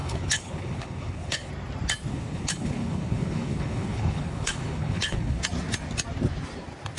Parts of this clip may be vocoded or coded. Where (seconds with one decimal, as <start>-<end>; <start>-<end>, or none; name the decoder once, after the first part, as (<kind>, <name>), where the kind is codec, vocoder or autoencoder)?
0.0-1.5 (codec, HILCodec); 2.1-5.4